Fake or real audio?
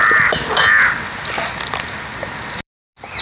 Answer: real